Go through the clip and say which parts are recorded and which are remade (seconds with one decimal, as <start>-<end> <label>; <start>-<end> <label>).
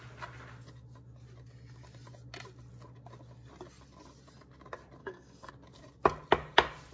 0.0-5.0 recorded; 5.0-5.5 remade; 5.5-6.9 recorded